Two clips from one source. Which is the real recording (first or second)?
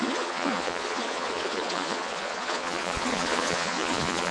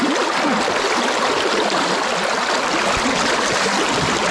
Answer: second